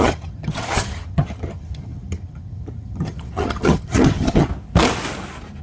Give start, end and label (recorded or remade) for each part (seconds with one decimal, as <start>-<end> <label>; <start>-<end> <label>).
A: 0.0-4.5 remade; 4.5-5.6 recorded